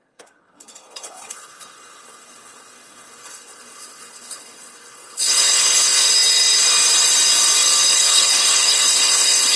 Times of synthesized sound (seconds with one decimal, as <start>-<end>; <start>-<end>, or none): 0.0-6.0; 7.9-9.6